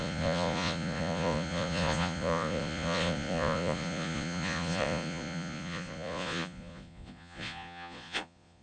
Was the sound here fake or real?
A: fake